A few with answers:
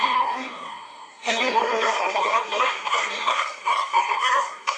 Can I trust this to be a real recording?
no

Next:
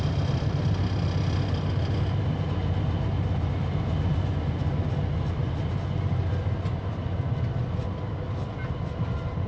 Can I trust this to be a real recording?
yes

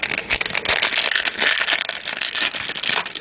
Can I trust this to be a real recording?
yes